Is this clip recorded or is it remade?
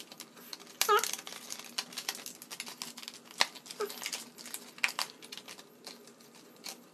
recorded